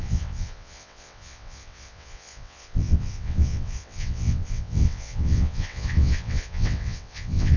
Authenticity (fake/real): fake